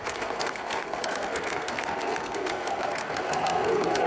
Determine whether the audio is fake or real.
fake